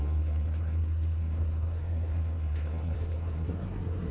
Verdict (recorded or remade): remade